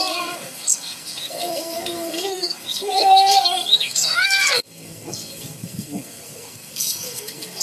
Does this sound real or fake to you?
fake